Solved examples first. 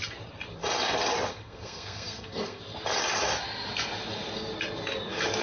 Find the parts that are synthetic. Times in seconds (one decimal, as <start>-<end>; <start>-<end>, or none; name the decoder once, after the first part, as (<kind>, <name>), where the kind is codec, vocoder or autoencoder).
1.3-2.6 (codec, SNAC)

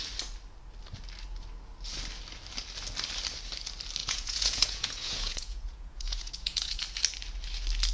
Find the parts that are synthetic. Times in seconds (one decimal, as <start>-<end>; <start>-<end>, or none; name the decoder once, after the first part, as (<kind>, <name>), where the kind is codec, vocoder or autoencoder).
4.0-6.8 (vocoder, Vocos)

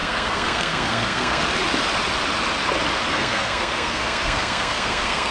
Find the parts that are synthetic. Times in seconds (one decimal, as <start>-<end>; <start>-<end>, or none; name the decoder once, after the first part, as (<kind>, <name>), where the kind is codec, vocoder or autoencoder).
0.0-1.4 (codec, SNAC); 3.1-5.3

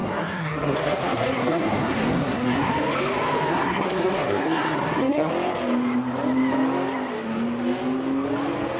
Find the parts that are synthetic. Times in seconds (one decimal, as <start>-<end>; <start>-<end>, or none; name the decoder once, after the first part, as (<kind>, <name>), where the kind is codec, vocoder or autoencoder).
0.0-2.7 (codec, SNAC); 3.5-5.3